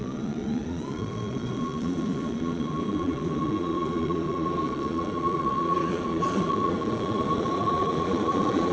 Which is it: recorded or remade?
remade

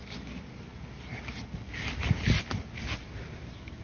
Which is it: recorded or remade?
recorded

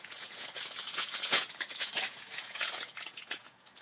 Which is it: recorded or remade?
remade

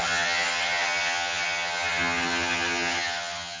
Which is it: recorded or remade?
remade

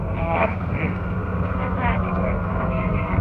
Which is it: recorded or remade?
remade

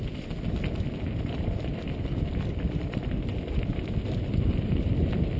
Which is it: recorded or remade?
recorded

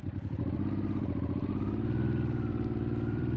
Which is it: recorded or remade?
remade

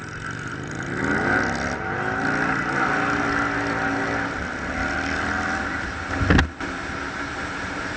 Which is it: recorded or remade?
recorded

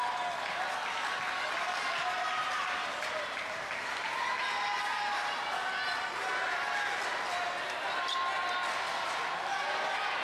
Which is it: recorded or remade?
recorded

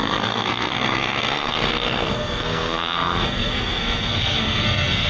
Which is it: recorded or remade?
remade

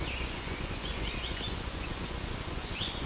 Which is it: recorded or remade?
remade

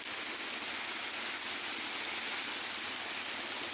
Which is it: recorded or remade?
recorded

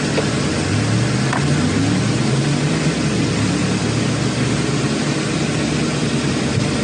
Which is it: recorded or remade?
recorded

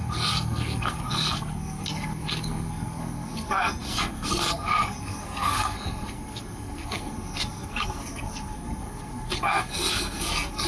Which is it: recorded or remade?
remade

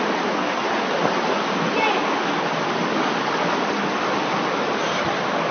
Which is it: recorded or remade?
recorded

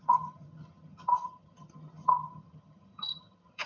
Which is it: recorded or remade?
remade